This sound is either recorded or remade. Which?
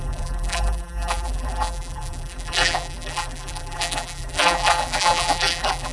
remade